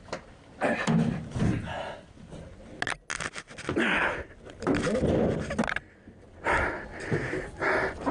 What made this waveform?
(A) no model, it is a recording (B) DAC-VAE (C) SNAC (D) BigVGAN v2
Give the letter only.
A